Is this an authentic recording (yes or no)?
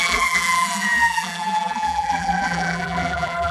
no